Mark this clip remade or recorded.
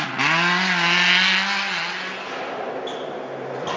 recorded